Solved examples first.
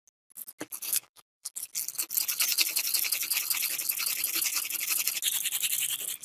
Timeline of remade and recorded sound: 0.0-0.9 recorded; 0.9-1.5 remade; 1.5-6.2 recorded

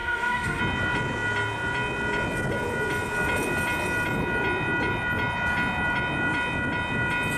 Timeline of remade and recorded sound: 0.0-0.6 remade; 0.6-7.4 recorded

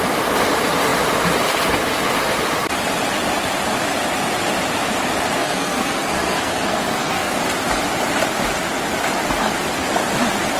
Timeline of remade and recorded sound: 0.0-5.4 recorded; 5.4-7.4 remade; 7.4-10.6 recorded

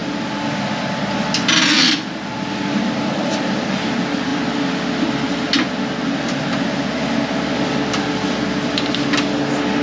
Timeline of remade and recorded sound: 0.0-9.8 recorded